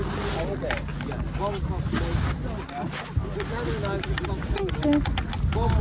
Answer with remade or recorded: recorded